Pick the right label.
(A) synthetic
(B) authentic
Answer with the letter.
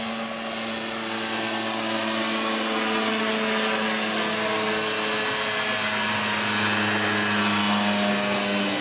B